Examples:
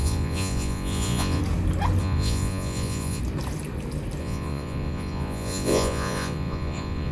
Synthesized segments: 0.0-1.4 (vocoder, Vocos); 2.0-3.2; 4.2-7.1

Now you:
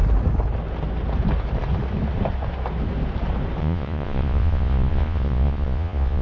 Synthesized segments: 3.6-6.2 (vocoder, Vocos)

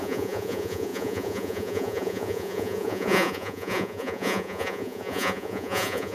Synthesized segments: 0.0-6.1 (vocoder, Vocos)

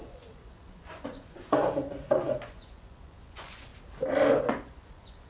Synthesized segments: 0.0-3.7 (vocoder, Vocos); 4.4-5.3

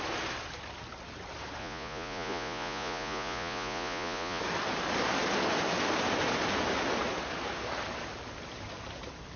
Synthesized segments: 1.6-4.4 (vocoder, Vocos)

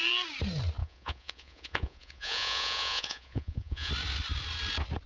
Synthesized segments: 0.8-3.9 (vocoder, Vocos)

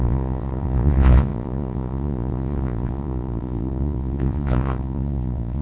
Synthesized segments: 0.0-5.6 (vocoder, Vocos)